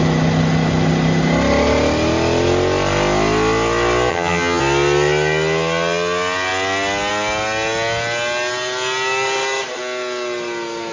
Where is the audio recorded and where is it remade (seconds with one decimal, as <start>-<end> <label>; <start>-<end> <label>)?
0.0-4.1 recorded; 4.1-4.6 remade; 4.6-10.9 recorded